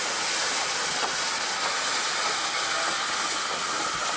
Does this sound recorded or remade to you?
recorded